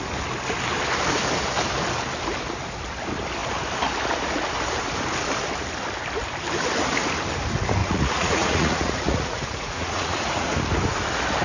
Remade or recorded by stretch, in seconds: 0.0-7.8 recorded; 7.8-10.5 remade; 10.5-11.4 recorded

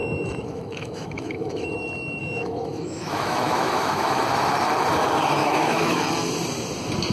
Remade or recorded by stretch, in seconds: 0.0-1.7 remade; 1.7-2.2 recorded; 2.2-4.2 remade; 4.2-5.4 recorded; 5.4-6.0 remade; 6.0-7.1 recorded

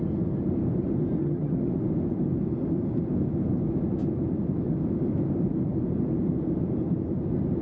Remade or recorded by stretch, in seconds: 0.0-1.2 recorded; 1.2-1.7 remade; 1.7-7.6 recorded

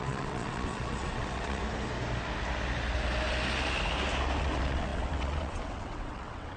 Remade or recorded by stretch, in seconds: 0.0-1.6 remade; 1.6-4.4 recorded; 4.4-6.6 remade

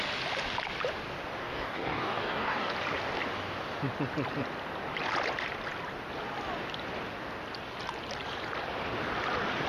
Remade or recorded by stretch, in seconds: 0.0-1.4 recorded; 1.4-2.7 remade; 2.7-9.7 recorded

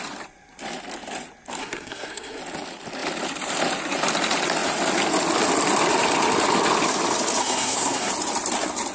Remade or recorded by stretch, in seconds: 0.0-1.6 recorded; 1.6-2.4 remade; 2.4-7.4 recorded; 7.4-8.1 remade; 8.1-8.9 recorded

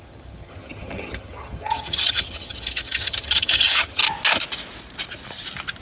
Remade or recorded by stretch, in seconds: 0.0-4.0 remade; 4.0-5.8 recorded